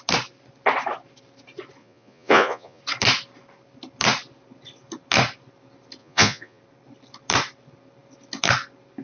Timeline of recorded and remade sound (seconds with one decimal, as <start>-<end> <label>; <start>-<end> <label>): 0.0-1.8 recorded; 1.8-2.8 remade; 2.8-6.0 recorded; 6.0-6.6 remade; 6.6-9.0 recorded